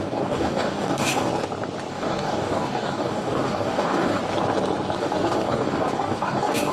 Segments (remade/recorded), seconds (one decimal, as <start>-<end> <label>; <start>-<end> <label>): 0.0-1.3 remade; 1.3-1.9 recorded; 1.9-4.2 remade; 4.2-5.0 recorded; 5.0-6.7 remade